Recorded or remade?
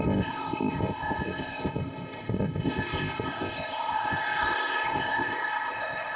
remade